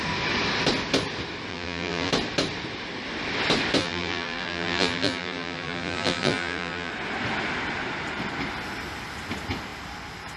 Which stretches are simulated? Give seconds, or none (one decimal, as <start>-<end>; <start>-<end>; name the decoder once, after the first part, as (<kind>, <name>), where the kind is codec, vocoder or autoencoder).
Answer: 1.5-2.1 (vocoder, BigVGAN v2); 3.8-6.9

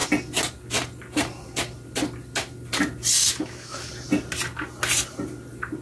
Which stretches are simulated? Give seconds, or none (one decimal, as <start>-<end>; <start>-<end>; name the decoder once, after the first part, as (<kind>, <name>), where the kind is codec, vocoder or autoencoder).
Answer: 3.2-3.9 (autoencoder, DAC-VAE)